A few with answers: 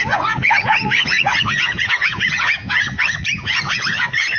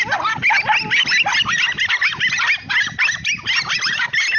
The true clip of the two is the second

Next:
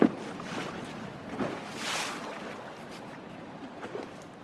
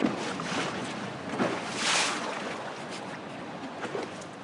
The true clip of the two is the first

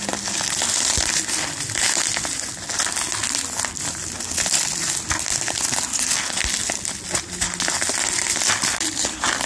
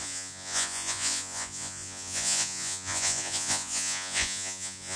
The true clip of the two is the first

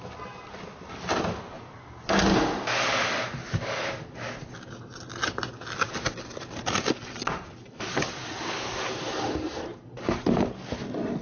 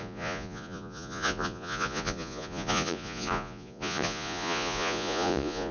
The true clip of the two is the first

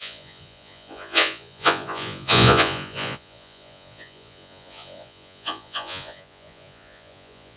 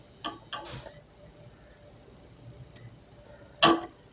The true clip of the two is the second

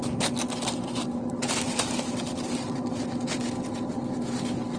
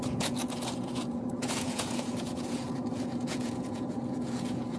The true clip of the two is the first